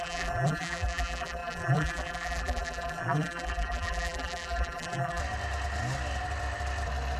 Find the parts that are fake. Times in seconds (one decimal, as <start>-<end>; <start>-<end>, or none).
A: 0.0-5.2